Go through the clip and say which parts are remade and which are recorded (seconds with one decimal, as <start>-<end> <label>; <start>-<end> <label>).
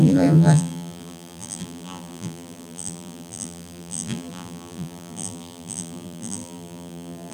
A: 0.0-7.3 remade